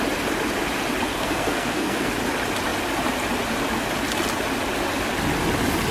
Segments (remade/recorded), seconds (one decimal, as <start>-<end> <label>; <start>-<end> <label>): 0.0-1.1 recorded; 1.1-2.1 remade; 2.1-5.9 recorded